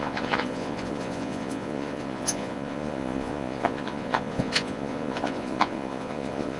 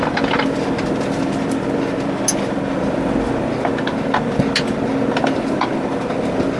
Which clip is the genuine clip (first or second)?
second